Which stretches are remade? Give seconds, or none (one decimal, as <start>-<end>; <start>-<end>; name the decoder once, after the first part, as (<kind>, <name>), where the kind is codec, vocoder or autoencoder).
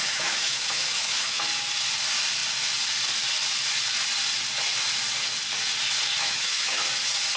0.0-1.4 (autoencoder, DAC-VAE); 6.2-6.8